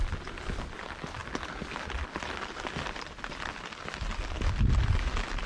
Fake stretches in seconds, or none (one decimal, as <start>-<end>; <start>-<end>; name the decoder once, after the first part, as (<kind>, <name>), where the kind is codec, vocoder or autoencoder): none